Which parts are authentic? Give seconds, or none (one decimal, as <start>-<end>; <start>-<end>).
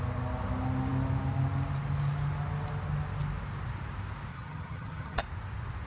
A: 0.0-4.3; 5.2-5.9